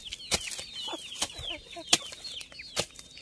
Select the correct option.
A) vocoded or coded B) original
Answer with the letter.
B